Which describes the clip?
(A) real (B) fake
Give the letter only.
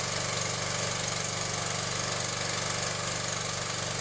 A